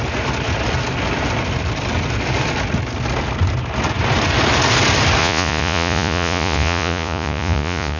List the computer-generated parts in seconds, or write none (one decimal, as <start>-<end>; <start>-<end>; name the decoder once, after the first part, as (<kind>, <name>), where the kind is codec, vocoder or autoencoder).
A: 5.2-8.0 (vocoder, Vocos)